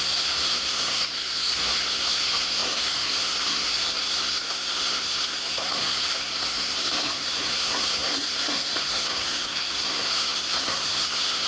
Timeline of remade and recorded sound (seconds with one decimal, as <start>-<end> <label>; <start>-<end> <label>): 0.0-11.5 remade